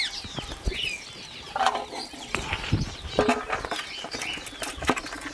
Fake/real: real